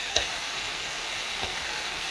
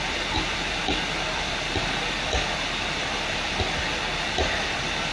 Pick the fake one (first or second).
first